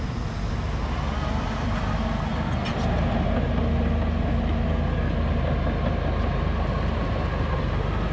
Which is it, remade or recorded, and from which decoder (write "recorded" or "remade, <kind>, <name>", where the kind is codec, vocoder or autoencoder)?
recorded